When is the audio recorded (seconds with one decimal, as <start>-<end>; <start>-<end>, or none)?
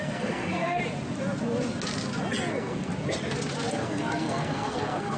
0.8-2.5; 2.9-3.7